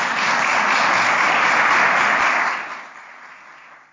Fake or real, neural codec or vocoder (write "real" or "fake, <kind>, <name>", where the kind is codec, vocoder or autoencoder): real